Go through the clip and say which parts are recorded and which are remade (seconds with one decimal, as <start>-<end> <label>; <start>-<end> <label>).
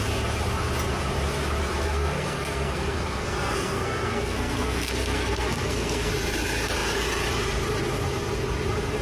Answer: 0.0-1.8 recorded; 1.8-6.1 remade; 6.1-9.0 recorded